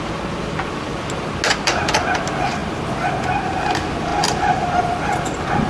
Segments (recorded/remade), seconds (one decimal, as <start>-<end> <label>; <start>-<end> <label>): 0.0-5.7 recorded

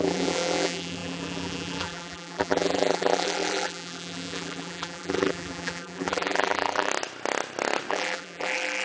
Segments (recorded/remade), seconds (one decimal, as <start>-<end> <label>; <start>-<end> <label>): 0.0-6.9 remade; 6.9-7.9 recorded; 7.9-8.8 remade

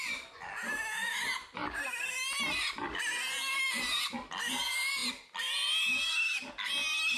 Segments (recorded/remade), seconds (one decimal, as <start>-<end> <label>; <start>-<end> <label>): 0.0-7.2 recorded

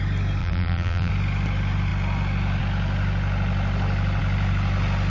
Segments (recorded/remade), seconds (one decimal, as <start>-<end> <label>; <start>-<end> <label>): 0.0-0.4 recorded; 0.4-1.1 remade; 1.1-5.1 recorded

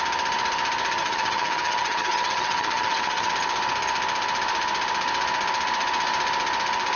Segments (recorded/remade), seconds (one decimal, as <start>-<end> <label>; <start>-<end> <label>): 0.0-1.0 recorded; 1.0-3.3 remade; 3.3-7.0 recorded

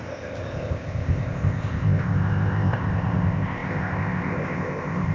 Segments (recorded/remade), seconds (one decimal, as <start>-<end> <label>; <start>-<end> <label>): 0.0-5.1 remade

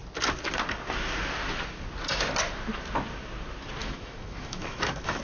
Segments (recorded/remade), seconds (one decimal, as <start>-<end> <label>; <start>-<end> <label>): 0.0-3.8 recorded; 3.8-5.2 remade